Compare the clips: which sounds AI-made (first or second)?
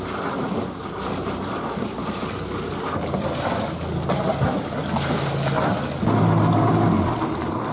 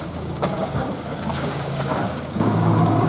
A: second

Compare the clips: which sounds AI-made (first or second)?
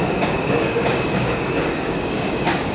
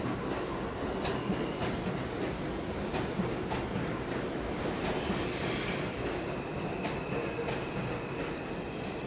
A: first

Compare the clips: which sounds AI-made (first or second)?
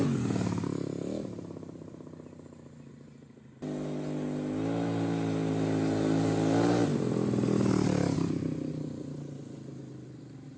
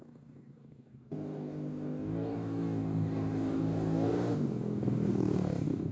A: second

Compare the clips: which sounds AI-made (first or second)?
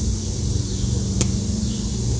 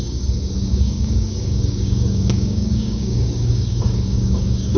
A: second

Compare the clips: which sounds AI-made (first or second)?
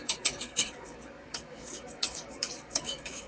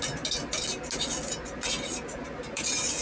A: first